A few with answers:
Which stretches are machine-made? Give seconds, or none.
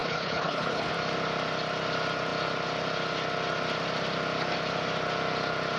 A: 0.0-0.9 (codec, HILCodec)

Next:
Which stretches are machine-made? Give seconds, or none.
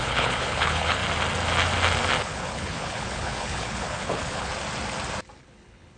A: 0.0-1.0 (codec, HILCodec); 2.2-4.5; 5.4-6.0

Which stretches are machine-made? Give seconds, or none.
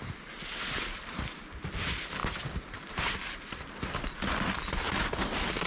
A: none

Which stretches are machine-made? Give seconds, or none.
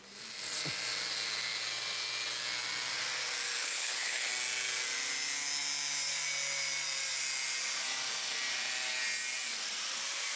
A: 3.6-4.3 (codec, HILCodec)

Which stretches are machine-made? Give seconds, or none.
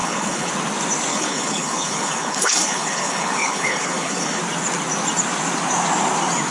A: 0.0-0.5 (codec, HILCodec); 1.1-4.4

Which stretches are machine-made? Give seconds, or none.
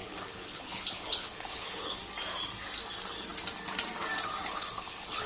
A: 0.0-2.0 (codec, HILCodec); 4.4-5.3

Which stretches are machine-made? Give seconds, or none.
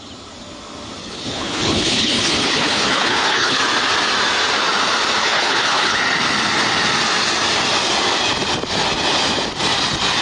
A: 1.0-3.6 (codec, HILCodec); 5.2-6.0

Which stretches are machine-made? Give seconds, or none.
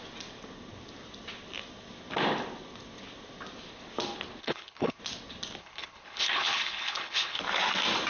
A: 4.4-5.0 (codec, HILCodec); 5.6-7.4